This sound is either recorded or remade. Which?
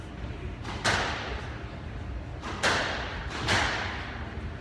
recorded